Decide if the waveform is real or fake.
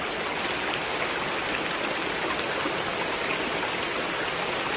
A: real